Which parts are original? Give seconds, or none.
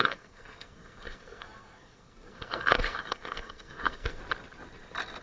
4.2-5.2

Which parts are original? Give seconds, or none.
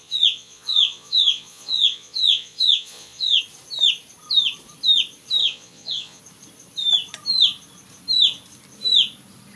3.4-5.4; 6.2-9.6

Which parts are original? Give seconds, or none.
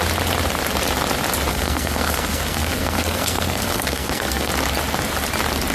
0.0-1.5; 4.5-5.7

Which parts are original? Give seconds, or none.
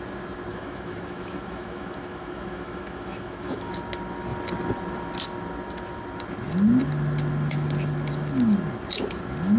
0.0-0.5; 3.7-9.6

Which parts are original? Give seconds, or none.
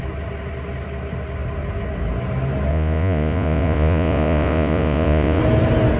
0.0-2.7; 5.4-6.0